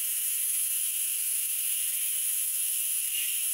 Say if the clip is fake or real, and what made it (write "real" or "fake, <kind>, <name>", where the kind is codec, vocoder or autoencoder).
fake, autoencoder, DAC-VAE